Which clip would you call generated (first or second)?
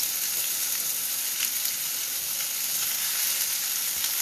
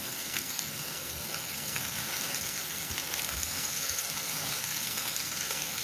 second